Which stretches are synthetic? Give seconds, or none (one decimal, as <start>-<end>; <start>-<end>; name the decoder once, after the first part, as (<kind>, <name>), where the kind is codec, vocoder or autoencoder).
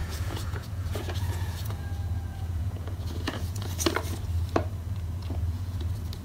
0.0-3.7 (vocoder, Vocos); 5.2-5.8